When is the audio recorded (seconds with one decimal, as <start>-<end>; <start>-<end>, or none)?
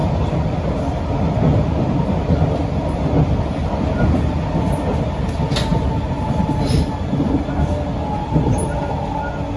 0.0-5.7; 7.5-9.6